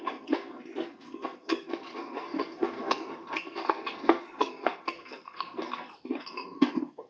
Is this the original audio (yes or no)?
no